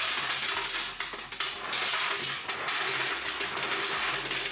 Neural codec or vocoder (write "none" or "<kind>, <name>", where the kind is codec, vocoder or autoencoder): none